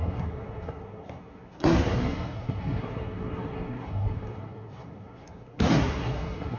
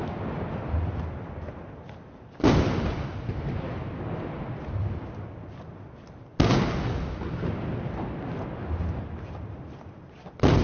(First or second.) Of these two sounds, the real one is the second